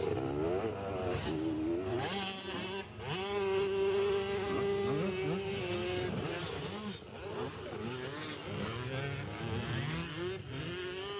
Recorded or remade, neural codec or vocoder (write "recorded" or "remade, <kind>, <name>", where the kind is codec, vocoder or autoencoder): recorded